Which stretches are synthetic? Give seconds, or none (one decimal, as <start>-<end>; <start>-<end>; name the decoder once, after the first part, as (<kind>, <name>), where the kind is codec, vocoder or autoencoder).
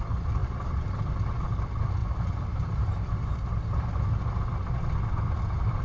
0.4-1.0 (vocoder, BigVGAN v2); 2.0-3.9